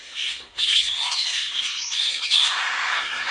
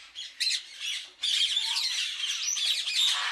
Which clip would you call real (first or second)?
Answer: second